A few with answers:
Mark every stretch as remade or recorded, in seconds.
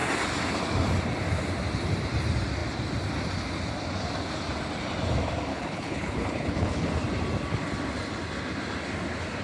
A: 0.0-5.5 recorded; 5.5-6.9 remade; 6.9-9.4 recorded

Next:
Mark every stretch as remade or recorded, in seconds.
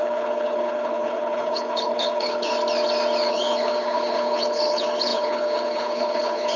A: 0.0-2.5 remade; 2.5-3.3 recorded; 3.3-6.6 remade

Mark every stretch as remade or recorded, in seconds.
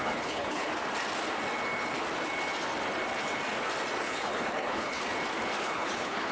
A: 0.0-0.7 remade; 0.7-4.0 recorded; 4.0-5.0 remade; 5.0-5.6 recorded; 5.6-6.3 remade